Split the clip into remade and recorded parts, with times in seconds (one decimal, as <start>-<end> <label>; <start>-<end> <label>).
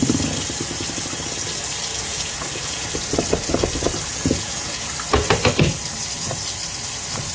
0.0-1.9 recorded; 1.9-2.9 remade; 2.9-4.1 recorded; 4.1-4.9 remade; 4.9-7.3 recorded